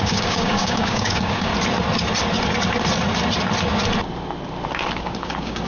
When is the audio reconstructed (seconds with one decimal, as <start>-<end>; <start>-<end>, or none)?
0.0-1.5; 4.9-5.7